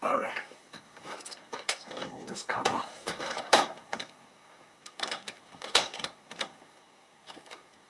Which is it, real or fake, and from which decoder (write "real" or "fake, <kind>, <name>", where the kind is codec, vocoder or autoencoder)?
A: fake, codec, SNAC